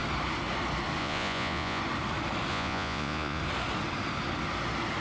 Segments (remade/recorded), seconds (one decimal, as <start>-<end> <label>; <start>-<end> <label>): 0.0-1.0 recorded; 1.0-1.8 remade; 1.8-2.5 recorded; 2.5-3.4 remade; 3.4-5.0 recorded